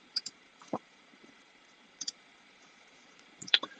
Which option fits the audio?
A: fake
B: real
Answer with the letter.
A